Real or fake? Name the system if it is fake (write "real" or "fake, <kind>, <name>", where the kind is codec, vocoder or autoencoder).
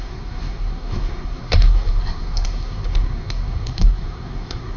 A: fake, codec, SNAC